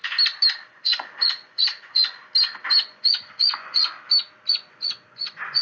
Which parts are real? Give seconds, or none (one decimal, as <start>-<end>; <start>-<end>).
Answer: 0.0-0.7; 2.2-2.8; 3.9-4.5